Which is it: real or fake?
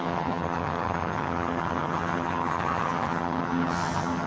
fake